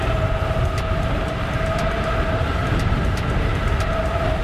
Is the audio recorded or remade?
recorded